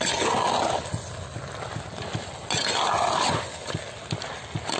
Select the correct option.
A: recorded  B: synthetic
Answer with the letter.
A